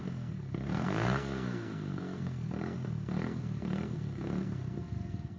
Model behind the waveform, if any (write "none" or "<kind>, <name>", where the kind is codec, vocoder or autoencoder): codec, SNAC